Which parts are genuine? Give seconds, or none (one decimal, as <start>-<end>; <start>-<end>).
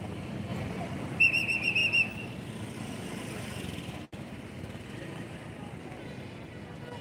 0.0-1.8; 6.0-7.0